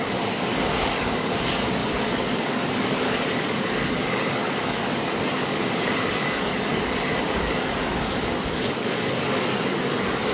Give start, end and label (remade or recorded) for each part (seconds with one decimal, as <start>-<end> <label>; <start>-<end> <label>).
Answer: 0.0-10.3 remade